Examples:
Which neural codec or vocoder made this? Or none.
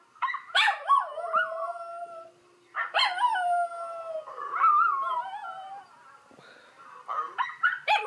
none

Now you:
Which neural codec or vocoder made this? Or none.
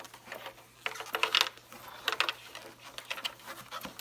none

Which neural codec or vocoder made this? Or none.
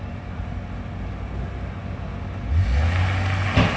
none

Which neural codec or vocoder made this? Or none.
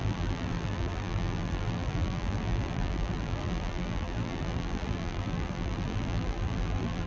vocoder, BigVGAN v2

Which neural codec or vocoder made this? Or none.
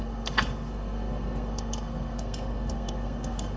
codec, SNAC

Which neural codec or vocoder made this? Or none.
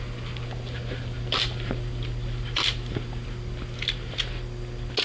none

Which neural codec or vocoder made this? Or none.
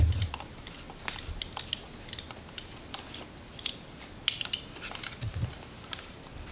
none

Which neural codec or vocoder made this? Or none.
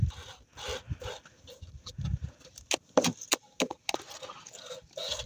none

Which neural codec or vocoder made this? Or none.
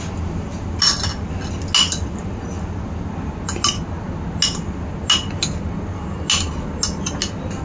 none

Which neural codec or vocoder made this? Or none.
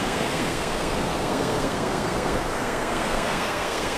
codec, SNAC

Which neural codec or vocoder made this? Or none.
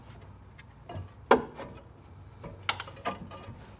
none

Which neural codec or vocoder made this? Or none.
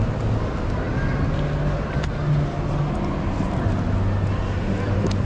none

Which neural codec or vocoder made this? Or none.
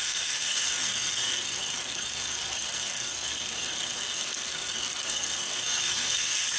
codec, SNAC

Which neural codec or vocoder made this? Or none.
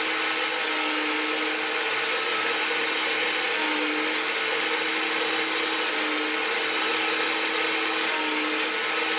none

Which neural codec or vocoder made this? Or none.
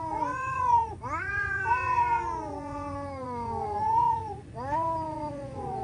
vocoder, Vocos